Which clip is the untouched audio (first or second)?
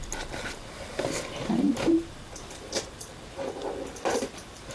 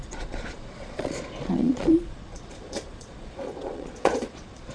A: first